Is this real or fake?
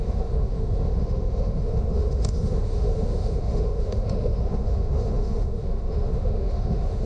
fake